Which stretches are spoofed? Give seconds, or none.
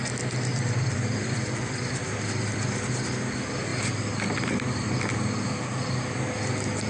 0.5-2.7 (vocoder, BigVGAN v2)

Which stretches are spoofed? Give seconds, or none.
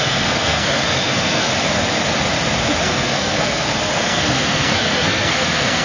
0.0-1.5 (codec, SNAC); 2.8-5.8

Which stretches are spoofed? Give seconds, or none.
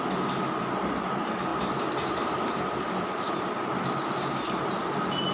none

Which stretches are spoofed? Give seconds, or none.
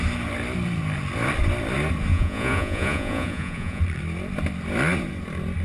2.1-3.8 (vocoder, Vocos)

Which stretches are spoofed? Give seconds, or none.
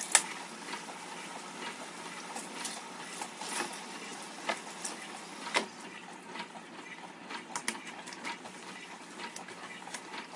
none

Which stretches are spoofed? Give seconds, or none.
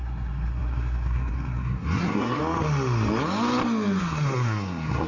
0.0-2.4 (codec, SNAC); 4.0-5.1